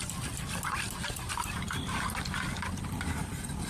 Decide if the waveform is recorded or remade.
recorded